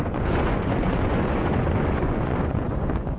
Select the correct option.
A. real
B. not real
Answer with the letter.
B